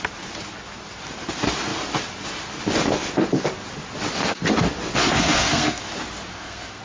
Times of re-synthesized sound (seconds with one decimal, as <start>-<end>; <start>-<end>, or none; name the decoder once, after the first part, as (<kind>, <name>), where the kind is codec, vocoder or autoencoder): 5.0-5.8 (codec, SNAC); 6.3-6.8